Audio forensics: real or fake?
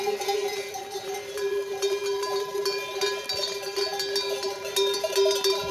real